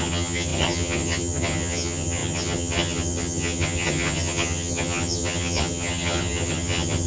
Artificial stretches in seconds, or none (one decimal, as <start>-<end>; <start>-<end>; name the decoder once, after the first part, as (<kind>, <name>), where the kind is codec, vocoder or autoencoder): 0.0-7.1 (vocoder, HiFi-GAN)